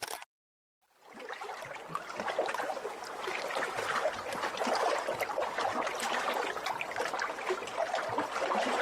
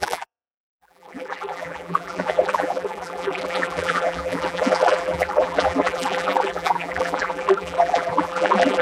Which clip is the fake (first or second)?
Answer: second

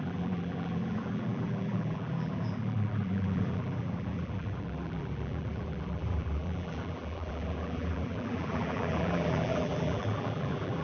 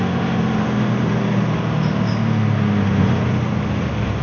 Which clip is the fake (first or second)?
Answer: first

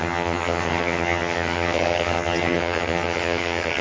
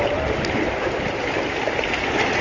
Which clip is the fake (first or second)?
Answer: first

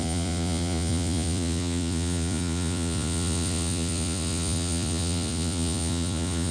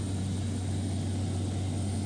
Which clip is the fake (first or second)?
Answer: first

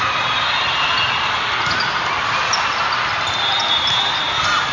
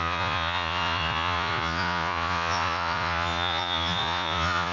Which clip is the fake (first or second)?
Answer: second